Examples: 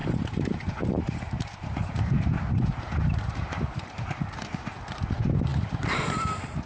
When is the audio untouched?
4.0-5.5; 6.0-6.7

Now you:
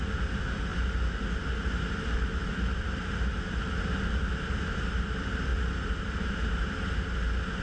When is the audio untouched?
0.0-0.7; 5.0-5.5; 6.5-7.6